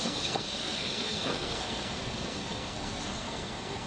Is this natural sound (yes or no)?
no